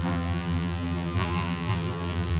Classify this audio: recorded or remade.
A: remade